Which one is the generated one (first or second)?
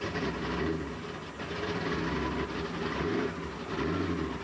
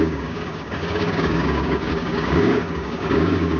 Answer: second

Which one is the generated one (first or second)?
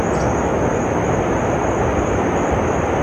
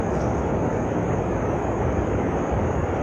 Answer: second